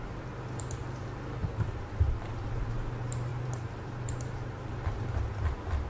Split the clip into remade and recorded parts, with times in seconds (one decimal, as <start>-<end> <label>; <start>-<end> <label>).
0.0-1.4 recorded; 1.4-2.4 remade; 2.4-3.3 recorded; 3.3-4.7 remade; 4.7-5.9 recorded